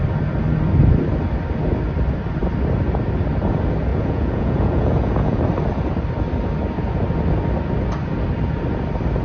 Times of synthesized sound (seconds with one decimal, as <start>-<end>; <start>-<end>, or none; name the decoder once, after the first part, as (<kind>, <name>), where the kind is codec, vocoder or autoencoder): 3.9-5.4 (vocoder, Vocos)